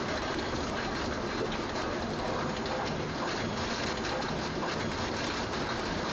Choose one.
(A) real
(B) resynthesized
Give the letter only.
A